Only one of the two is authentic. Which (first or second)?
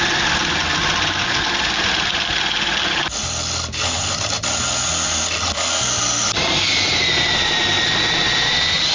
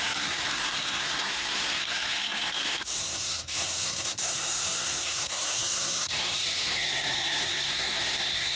first